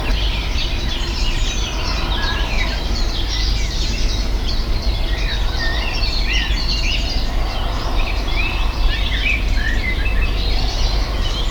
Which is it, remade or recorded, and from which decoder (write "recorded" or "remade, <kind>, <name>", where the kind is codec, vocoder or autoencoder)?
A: recorded